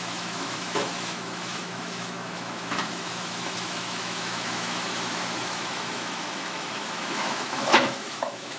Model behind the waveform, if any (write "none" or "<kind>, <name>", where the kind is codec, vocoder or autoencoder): autoencoder, DAC-VAE